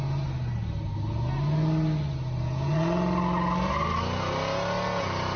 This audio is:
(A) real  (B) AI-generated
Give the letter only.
A